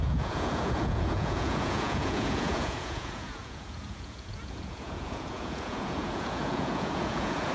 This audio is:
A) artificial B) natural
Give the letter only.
A